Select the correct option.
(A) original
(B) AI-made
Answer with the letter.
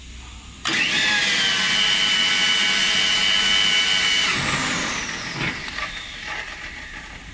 A